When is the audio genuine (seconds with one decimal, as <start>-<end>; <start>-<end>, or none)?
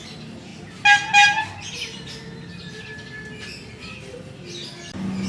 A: 0.0-5.3